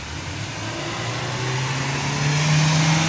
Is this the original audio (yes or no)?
yes